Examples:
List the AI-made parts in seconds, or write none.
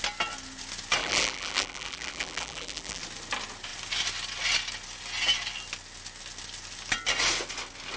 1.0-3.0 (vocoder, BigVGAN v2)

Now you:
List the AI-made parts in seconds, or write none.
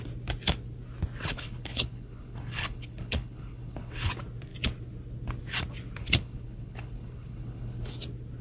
1.3-4.1 (codec, HILCodec); 6.0-7.9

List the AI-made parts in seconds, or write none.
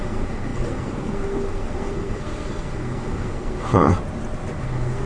0.0-3.9 (codec, SNAC); 4.6-5.1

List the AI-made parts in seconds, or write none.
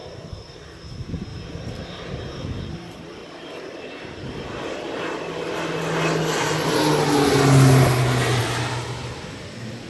0.0-1.3 (vocoder, BigVGAN v2); 1.9-3.2; 8.4-9.9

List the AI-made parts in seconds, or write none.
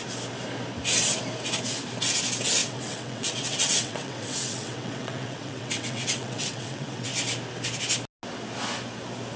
2.6-7.1 (vocoder, WaveNeXt)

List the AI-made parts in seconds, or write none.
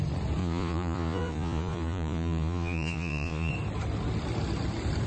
0.4-3.5 (vocoder, Vocos)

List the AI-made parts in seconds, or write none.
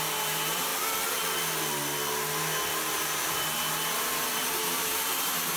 0.0-0.7 (vocoder, BigVGAN v2); 2.9-5.6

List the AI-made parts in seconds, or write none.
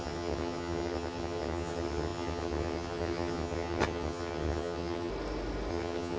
0.0-5.1 (vocoder, HiFi-GAN); 5.7-6.2